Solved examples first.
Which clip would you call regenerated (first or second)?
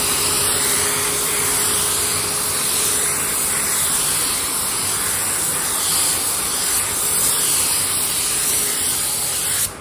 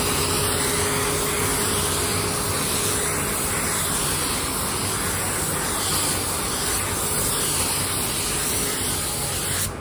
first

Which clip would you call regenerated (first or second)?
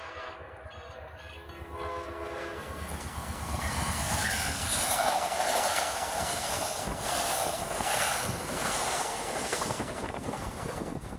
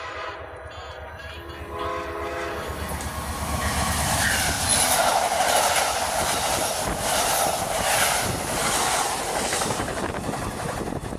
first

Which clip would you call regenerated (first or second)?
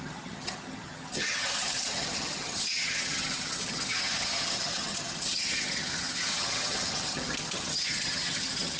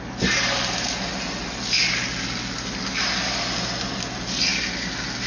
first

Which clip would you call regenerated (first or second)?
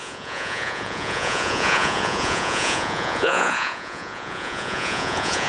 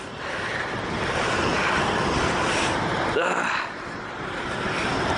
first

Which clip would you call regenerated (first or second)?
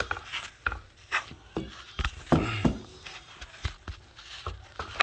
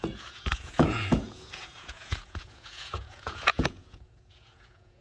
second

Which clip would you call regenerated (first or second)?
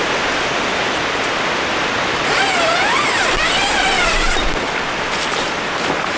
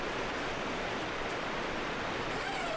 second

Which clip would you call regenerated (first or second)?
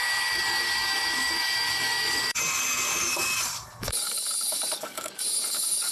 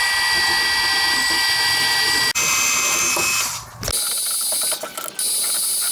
first